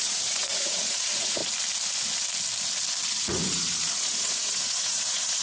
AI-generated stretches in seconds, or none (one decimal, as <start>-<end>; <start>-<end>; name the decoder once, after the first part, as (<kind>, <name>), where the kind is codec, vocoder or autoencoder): 0.0-1.4 (vocoder, Vocos); 3.2-5.4